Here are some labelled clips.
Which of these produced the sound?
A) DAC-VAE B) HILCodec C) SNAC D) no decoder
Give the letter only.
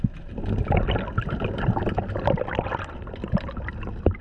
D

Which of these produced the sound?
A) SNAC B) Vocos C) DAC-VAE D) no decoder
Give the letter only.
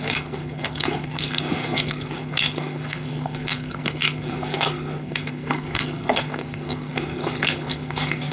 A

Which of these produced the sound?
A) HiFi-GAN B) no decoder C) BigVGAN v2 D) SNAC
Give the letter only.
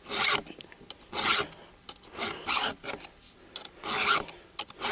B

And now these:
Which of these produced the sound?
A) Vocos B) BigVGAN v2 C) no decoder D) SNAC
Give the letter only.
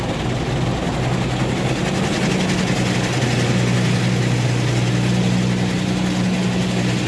C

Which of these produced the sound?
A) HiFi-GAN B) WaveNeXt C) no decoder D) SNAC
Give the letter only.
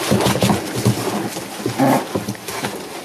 C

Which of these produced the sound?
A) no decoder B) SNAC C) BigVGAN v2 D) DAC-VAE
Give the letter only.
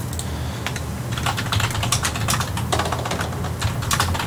A